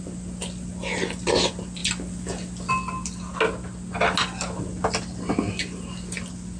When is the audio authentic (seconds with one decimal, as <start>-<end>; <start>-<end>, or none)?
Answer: 0.0-6.6